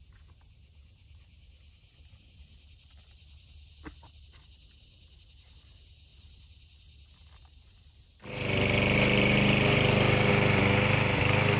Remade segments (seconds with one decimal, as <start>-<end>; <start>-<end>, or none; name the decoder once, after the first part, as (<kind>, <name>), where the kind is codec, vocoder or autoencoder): none